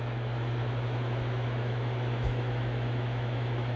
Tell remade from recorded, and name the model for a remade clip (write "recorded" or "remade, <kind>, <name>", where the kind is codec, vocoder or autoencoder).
remade, autoencoder, DAC-VAE